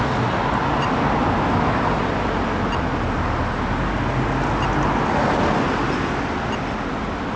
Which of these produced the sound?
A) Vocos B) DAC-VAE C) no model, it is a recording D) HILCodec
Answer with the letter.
C